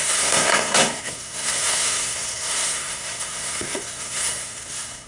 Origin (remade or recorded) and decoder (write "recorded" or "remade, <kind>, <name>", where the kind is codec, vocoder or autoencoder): remade, codec, SNAC